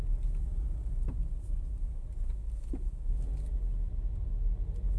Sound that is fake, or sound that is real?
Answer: real